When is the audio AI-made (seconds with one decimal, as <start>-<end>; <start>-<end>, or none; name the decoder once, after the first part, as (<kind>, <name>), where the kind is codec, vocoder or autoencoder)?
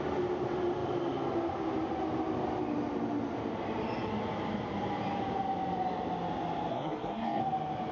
6.7-7.4 (codec, SNAC)